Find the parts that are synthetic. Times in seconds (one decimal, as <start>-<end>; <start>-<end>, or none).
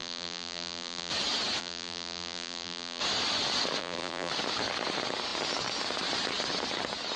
0.0-1.1; 1.6-3.0; 3.8-4.3